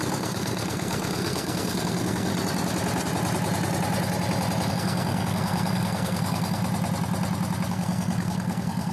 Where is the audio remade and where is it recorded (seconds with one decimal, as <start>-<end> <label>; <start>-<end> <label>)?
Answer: 0.0-2.3 remade; 2.3-4.7 recorded; 4.7-6.6 remade; 6.6-7.7 recorded; 7.7-8.9 remade